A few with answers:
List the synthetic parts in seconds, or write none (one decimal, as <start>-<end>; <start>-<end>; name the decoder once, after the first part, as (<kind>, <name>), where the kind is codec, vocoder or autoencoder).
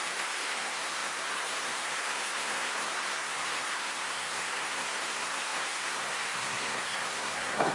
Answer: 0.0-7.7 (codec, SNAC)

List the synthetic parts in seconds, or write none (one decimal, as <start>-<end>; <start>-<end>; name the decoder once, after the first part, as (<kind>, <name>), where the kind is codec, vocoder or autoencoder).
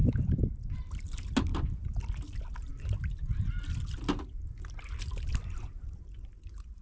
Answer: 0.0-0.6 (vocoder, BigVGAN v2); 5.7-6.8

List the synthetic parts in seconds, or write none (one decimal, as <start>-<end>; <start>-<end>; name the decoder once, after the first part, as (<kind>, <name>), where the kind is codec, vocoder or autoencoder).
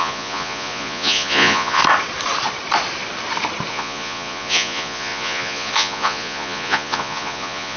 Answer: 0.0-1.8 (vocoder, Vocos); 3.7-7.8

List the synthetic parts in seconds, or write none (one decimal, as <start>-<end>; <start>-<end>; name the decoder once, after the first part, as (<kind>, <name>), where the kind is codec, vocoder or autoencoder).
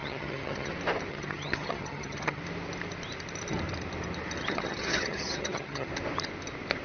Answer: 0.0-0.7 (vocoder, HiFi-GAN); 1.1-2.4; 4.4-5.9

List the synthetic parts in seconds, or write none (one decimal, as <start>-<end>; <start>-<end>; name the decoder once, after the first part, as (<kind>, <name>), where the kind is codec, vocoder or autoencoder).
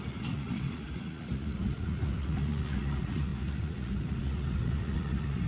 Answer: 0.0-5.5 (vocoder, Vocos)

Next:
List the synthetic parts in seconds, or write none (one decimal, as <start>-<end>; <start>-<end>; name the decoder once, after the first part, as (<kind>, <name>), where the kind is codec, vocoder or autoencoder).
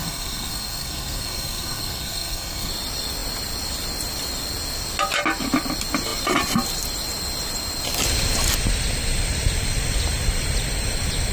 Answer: 0.0-2.7 (codec, SNAC)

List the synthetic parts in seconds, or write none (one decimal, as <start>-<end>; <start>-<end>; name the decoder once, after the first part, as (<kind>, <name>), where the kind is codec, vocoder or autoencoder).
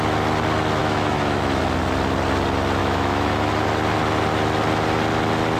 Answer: 0.8-1.6 (autoencoder, DAC-VAE); 2.8-3.5